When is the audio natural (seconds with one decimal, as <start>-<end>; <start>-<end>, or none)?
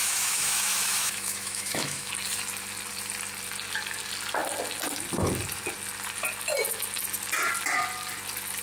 2.1-8.6